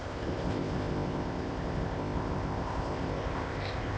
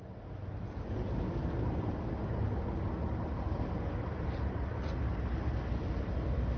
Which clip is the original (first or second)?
second